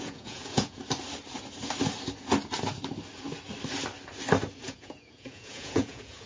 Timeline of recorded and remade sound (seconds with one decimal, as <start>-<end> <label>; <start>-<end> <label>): 0.0-0.8 remade; 0.8-4.6 recorded; 4.6-6.3 remade